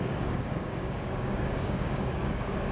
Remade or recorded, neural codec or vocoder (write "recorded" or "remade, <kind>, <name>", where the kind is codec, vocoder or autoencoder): remade, codec, DAC